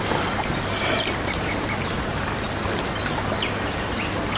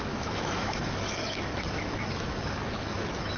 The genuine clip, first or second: first